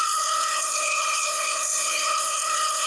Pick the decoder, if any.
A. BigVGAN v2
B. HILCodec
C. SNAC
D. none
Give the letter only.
B